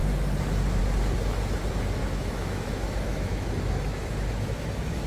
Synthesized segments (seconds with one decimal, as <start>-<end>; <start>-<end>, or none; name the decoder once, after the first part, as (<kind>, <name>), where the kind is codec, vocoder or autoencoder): 2.0-5.1 (autoencoder, DAC-VAE)